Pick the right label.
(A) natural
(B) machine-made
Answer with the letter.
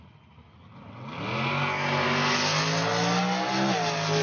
A